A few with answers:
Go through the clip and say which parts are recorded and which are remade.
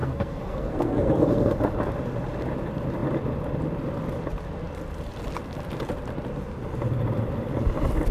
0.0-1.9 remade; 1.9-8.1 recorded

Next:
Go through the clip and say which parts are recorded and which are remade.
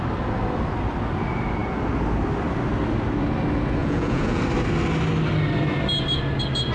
0.0-3.8 recorded; 3.8-4.4 remade; 4.4-6.7 recorded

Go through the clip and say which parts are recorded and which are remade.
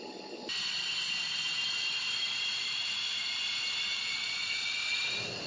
0.0-3.9 recorded; 3.9-5.0 remade; 5.0-5.5 recorded